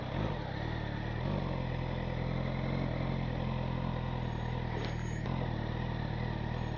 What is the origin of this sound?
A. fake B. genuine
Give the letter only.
B